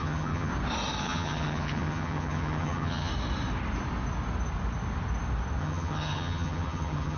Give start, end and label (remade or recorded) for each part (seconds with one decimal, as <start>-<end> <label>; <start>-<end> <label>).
0.0-0.5 remade; 0.5-1.0 recorded; 1.0-3.1 remade; 3.1-5.6 recorded; 5.6-7.2 remade